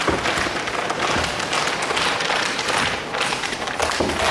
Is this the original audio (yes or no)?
yes